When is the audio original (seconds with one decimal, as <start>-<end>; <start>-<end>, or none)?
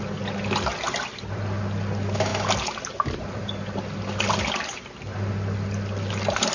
0.0-6.5